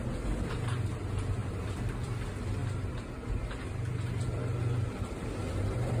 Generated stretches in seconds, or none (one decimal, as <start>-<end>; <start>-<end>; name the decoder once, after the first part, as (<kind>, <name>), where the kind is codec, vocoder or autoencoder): 1.4-1.9 (vocoder, BigVGAN v2)